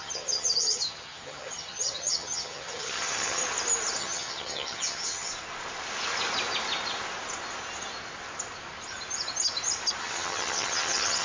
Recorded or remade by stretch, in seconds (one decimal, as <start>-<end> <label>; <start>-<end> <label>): 0.0-3.4 remade; 3.4-4.0 recorded; 4.0-5.3 remade; 5.3-10.0 recorded; 10.0-11.2 remade